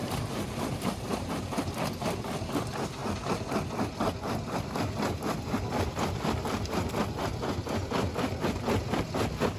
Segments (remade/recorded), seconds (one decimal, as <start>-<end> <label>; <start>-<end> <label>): 0.0-1.3 remade; 1.3-9.6 recorded